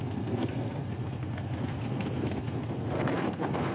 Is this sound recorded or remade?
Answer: remade